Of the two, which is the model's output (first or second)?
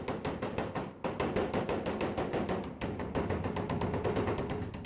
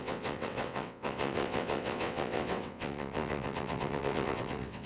second